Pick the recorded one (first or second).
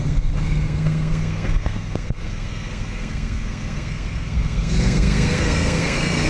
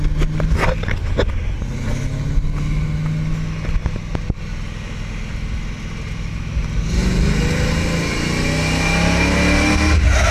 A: second